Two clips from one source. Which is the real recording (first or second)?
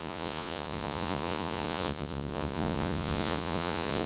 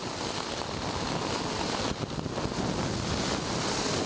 second